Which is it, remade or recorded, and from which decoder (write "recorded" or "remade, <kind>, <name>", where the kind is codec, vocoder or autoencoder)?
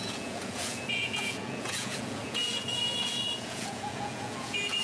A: remade, vocoder, Vocos